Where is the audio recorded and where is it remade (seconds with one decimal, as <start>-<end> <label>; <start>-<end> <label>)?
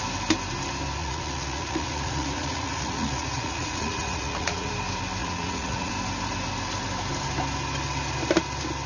0.0-1.0 recorded; 1.0-4.7 remade; 4.7-5.2 recorded; 5.2-5.9 remade; 5.9-8.9 recorded